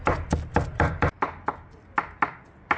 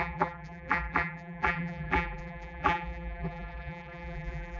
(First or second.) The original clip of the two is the first